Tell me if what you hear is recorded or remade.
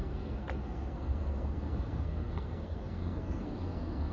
remade